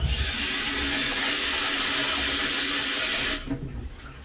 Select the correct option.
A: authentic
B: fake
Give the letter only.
A